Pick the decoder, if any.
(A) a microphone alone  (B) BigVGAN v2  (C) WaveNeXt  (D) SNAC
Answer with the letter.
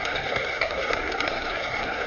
D